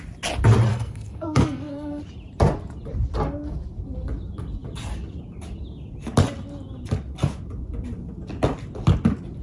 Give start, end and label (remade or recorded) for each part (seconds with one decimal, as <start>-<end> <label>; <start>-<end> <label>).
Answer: 0.0-0.7 recorded; 0.7-2.0 remade; 2.0-9.4 recorded